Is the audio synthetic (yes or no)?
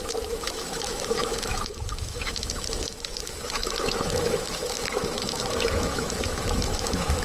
yes